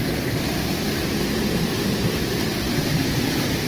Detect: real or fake real